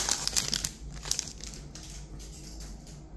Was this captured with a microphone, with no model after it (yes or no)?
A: yes